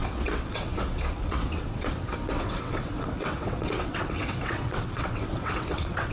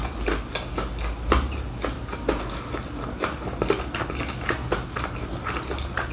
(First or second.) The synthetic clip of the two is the first